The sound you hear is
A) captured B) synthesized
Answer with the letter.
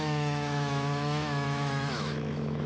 B